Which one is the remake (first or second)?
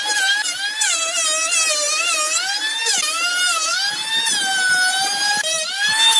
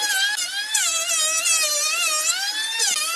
first